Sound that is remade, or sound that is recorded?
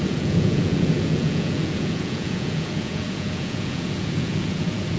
remade